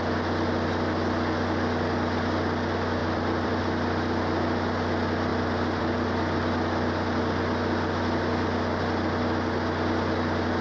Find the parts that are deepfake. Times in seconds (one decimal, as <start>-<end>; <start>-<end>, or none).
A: 3.0-3.6